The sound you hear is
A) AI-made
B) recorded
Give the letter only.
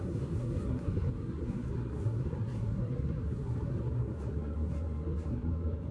A